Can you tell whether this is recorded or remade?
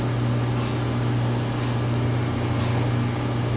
recorded